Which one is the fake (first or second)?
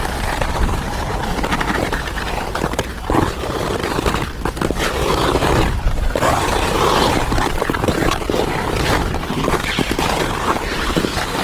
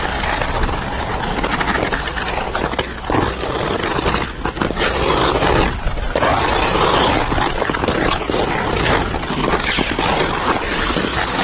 first